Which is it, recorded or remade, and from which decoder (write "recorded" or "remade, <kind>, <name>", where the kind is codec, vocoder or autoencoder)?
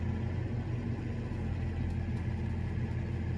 recorded